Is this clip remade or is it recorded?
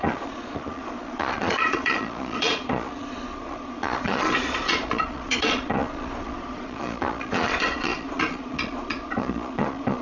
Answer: remade